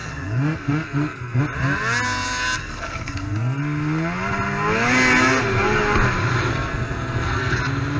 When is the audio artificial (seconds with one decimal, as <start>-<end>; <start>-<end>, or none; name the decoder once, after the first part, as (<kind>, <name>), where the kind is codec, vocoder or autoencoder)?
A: 0.0-1.4 (codec, SNAC); 2.6-3.6; 6.5-7.6